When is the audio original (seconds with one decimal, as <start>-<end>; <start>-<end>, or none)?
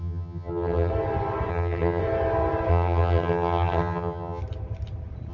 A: 0.9-1.5; 2.0-2.7; 4.4-5.3